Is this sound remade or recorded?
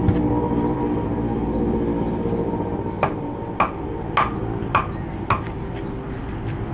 recorded